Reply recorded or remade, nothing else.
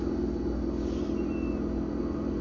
recorded